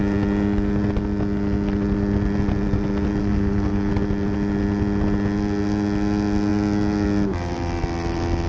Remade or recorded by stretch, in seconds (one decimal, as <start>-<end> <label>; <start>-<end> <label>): 0.0-3.2 recorded; 3.2-3.9 remade; 3.9-8.5 recorded